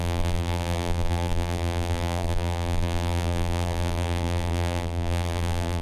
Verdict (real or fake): fake